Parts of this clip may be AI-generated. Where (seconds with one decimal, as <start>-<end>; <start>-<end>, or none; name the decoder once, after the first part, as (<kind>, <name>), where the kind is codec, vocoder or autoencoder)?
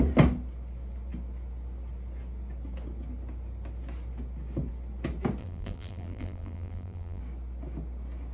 5.4-7.2 (vocoder, BigVGAN v2)